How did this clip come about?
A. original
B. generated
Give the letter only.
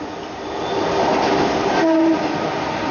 A